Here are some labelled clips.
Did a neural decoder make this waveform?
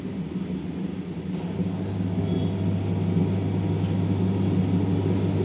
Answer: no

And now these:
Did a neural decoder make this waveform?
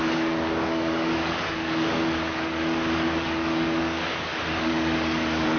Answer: yes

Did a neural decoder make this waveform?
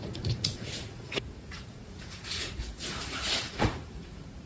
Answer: yes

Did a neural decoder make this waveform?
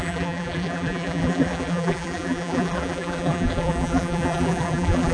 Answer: yes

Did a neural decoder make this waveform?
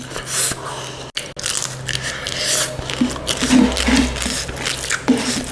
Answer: no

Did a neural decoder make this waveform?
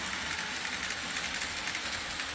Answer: no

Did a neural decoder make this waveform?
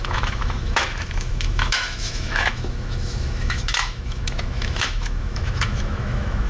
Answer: yes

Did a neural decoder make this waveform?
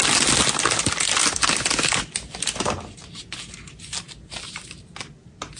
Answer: no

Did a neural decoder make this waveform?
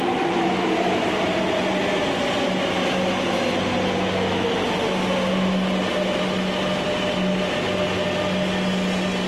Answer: no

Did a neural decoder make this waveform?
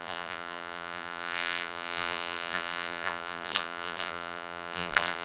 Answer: yes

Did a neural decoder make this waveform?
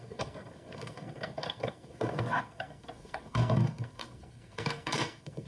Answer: yes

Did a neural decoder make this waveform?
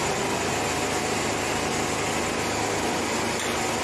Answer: no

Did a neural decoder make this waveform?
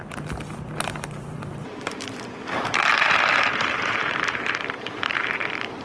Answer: yes